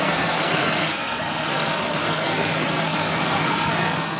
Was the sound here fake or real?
fake